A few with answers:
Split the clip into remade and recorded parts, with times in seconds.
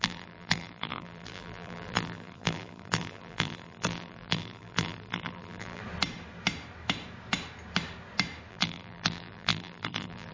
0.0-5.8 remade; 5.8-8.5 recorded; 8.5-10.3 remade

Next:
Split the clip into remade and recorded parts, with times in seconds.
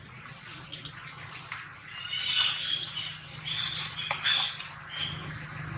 0.0-5.8 recorded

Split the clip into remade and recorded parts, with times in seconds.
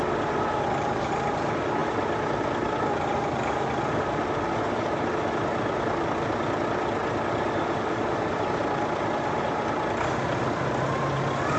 0.0-7.0 recorded; 7.0-8.6 remade; 8.6-11.6 recorded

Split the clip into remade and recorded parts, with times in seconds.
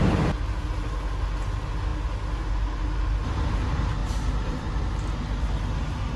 0.0-4.0 recorded; 4.0-4.7 remade; 4.7-6.2 recorded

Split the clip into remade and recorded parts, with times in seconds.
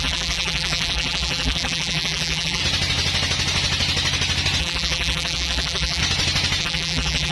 0.0-2.6 remade; 2.6-4.6 recorded; 4.6-6.0 remade; 6.0-6.6 recorded; 6.6-7.3 remade